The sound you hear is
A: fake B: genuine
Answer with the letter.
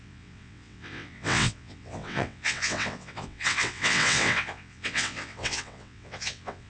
A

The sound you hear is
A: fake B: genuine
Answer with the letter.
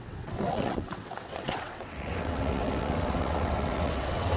A